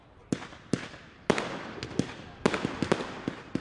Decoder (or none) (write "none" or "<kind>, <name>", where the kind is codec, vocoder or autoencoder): none